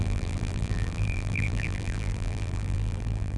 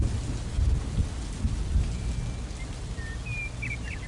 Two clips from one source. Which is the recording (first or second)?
second